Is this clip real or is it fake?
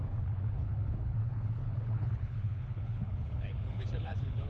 fake